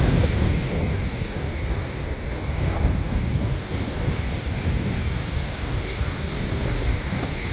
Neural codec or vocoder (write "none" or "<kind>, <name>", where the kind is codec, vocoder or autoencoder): codec, DAC